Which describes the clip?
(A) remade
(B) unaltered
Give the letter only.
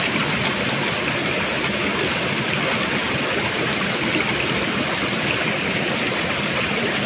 B